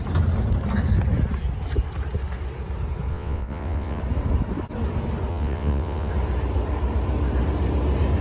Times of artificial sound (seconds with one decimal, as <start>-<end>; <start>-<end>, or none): 3.1-4.0; 5.3-6.1